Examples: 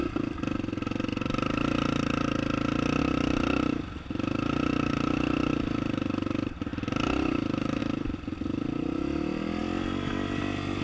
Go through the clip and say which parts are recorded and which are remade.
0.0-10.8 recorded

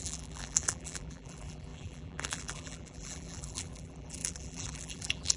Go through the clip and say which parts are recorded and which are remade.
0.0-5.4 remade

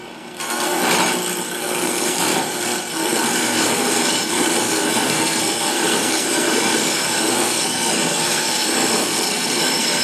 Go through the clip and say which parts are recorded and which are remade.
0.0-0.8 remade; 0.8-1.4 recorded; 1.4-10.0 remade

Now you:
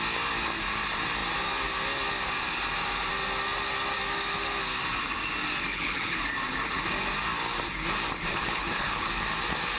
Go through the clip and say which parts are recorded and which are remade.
0.0-5.7 recorded; 5.7-6.2 remade; 6.2-8.3 recorded; 8.3-9.1 remade; 9.1-9.8 recorded

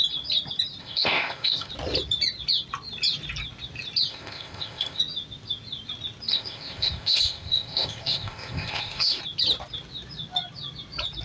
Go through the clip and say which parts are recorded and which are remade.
0.0-0.8 recorded; 0.8-1.7 remade; 1.7-4.1 recorded; 4.1-5.0 remade; 5.0-6.3 recorded; 6.3-9.2 remade; 9.2-11.2 recorded

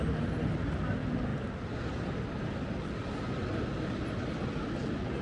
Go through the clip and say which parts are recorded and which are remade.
0.0-5.2 recorded

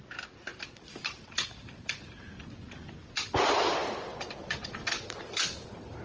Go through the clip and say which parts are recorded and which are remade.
0.0-0.5 recorded; 0.5-2.3 remade; 2.3-4.4 recorded; 4.4-6.0 remade